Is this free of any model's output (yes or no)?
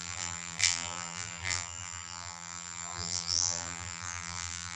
no